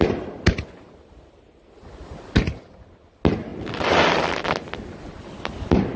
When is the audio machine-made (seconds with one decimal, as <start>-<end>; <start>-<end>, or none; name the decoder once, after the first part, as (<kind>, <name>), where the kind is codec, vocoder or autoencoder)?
none